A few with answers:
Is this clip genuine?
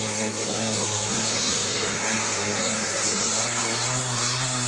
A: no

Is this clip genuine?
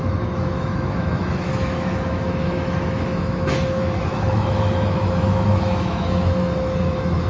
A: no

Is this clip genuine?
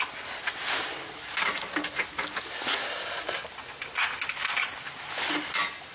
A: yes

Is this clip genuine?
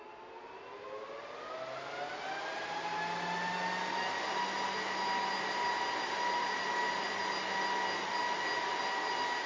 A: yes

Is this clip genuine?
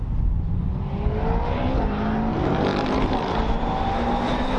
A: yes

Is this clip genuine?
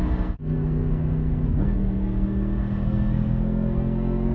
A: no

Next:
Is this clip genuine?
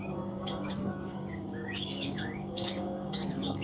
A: no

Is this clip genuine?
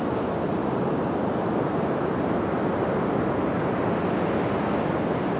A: yes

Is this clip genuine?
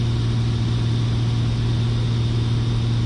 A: yes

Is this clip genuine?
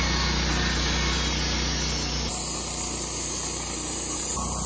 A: yes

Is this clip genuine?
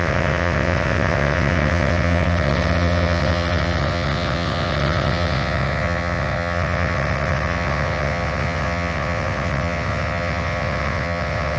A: no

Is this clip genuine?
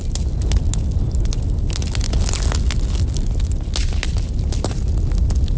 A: yes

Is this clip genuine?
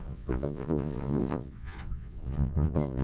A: no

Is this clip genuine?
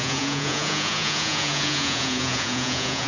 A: no